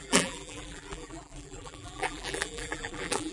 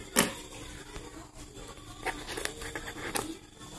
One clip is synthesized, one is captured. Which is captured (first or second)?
second